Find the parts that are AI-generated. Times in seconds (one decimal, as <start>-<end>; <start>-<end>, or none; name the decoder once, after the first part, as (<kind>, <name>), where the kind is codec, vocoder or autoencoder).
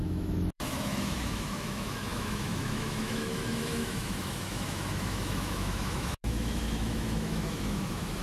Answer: 0.0-8.2 (autoencoder, DAC-VAE)